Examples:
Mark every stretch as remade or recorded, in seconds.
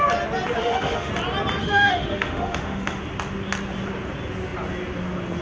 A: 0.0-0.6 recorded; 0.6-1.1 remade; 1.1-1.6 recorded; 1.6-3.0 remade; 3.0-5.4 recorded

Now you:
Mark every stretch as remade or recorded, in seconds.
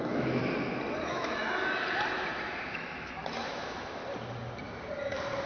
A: 0.0-0.4 remade; 0.4-1.0 recorded; 1.0-1.4 remade; 1.4-2.7 recorded; 2.7-4.0 remade; 4.0-5.5 recorded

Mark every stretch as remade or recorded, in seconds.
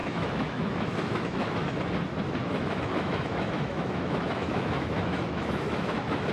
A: 0.0-1.8 remade; 1.8-2.4 recorded; 2.4-6.3 remade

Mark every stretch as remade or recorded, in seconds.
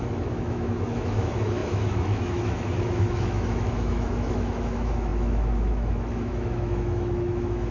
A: 0.0-7.7 remade